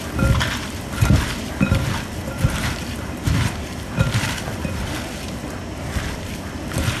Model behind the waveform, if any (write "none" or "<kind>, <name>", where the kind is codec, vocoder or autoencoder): vocoder, BigVGAN v2